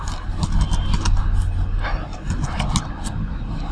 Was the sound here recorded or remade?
recorded